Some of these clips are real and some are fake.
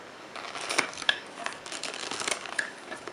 fake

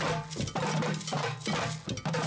real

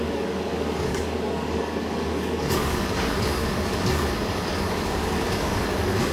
fake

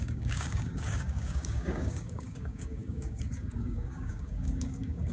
fake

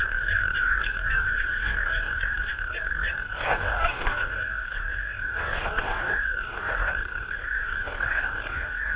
fake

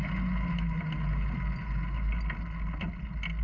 real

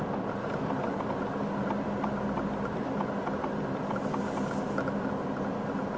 real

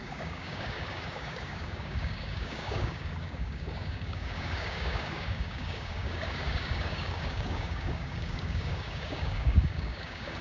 fake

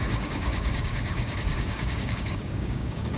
fake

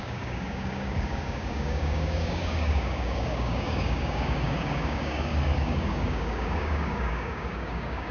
fake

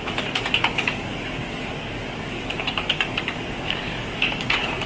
fake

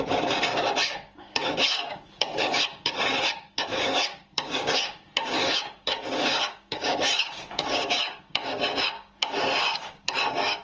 fake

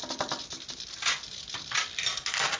real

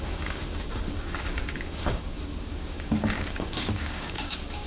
fake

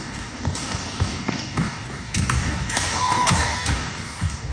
fake